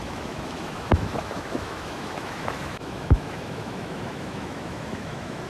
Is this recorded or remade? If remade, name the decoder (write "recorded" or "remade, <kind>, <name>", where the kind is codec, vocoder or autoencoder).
remade, autoencoder, DAC-VAE